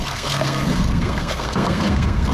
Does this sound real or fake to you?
fake